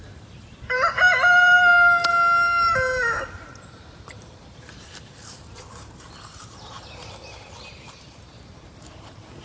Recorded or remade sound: remade